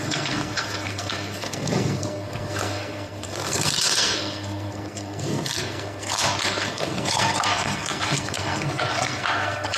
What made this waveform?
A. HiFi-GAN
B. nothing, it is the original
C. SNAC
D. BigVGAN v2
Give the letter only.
C